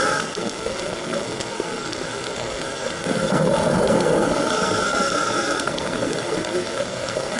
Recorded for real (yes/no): no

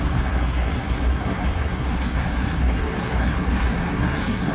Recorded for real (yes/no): no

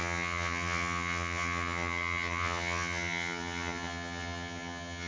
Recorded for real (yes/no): no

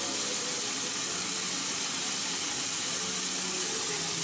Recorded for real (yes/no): yes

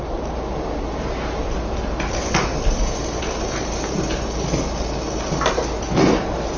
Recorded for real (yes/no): yes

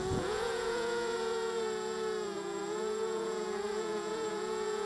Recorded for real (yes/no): no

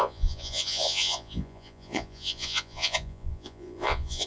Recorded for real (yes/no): no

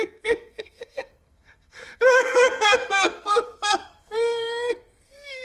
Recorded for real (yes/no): no